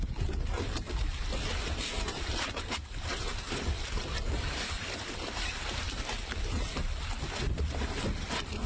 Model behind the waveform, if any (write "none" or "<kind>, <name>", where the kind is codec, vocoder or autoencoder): none